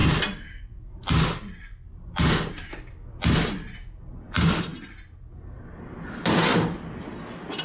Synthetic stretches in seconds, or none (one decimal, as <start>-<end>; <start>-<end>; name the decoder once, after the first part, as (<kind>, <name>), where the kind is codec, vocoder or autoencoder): none